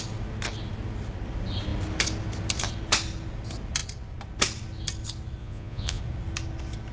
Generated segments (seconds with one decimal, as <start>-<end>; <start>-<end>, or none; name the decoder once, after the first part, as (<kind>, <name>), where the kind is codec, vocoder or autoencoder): 5.4-6.0 (vocoder, Vocos)